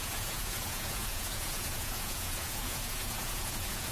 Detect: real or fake fake